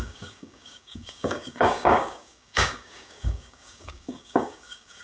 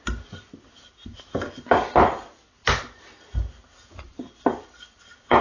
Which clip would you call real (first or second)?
second